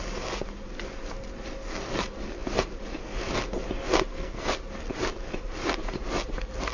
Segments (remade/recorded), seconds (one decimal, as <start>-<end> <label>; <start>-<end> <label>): 0.0-4.1 recorded; 4.1-4.6 remade; 4.6-6.7 recorded